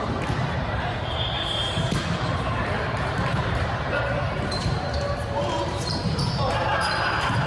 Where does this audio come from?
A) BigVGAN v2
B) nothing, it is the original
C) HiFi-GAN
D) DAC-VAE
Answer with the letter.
A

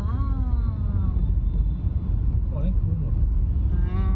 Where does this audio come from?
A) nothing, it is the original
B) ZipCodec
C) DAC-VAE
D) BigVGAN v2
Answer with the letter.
A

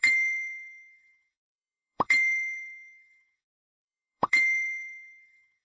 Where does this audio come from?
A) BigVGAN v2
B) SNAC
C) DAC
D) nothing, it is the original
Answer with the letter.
C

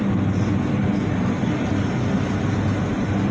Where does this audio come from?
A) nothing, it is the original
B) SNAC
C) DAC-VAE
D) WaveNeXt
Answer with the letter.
A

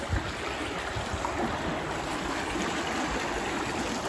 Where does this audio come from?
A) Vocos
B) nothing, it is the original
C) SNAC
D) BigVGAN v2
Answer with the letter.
B